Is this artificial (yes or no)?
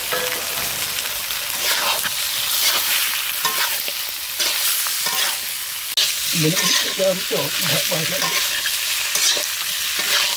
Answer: no